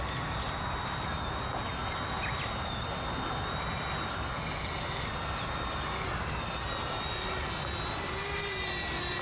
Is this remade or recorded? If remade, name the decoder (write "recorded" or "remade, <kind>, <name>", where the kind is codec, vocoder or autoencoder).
recorded